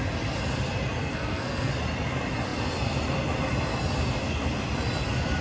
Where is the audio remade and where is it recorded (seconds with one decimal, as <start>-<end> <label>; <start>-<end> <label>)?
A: 0.0-1.0 recorded; 1.0-1.7 remade; 1.7-5.4 recorded